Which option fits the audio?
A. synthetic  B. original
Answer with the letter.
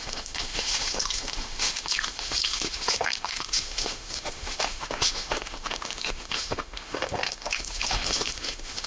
A